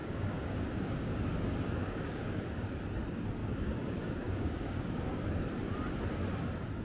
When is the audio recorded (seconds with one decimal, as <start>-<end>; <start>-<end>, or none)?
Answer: 2.4-3.4; 5.0-6.8